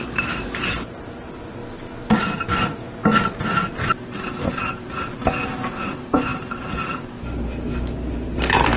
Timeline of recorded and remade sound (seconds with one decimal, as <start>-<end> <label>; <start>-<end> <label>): 0.0-1.6 remade; 1.6-2.5 recorded; 2.5-8.8 remade